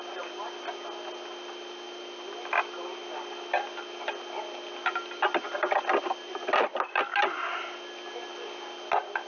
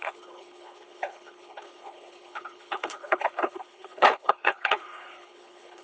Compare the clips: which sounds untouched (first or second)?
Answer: first